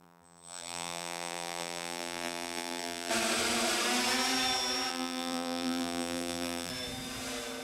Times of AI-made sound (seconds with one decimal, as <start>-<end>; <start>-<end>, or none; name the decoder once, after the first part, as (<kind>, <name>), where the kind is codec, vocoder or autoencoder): 0.0-3.1 (vocoder, BigVGAN v2); 4.9-6.7